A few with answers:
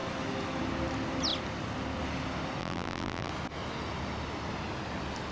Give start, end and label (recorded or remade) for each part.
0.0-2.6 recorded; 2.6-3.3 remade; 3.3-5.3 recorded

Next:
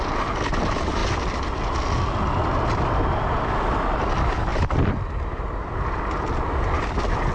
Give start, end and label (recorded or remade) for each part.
0.0-7.3 recorded

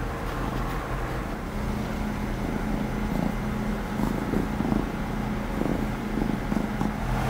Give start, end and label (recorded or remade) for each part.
0.0-7.3 recorded

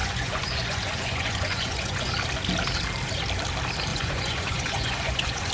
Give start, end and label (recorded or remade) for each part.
0.0-2.1 remade; 2.1-3.9 recorded; 3.9-5.5 remade

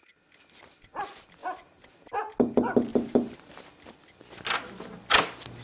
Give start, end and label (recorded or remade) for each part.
0.0-2.9 recorded; 2.9-3.7 remade; 3.7-5.6 recorded

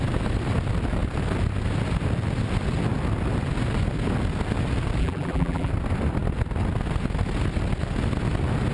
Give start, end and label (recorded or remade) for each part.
0.0-5.0 recorded; 5.0-5.7 remade; 5.7-8.7 recorded

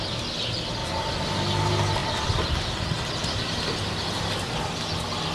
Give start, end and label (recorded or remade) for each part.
0.0-5.3 recorded

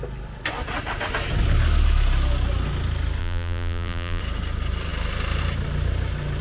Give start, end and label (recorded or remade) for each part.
0.0-3.2 recorded; 3.2-4.2 remade; 4.2-6.4 recorded